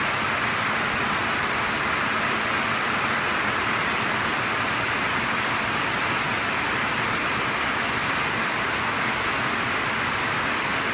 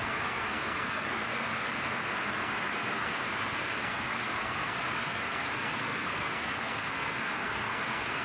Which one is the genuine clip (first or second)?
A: first